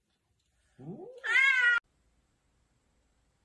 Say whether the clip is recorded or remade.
recorded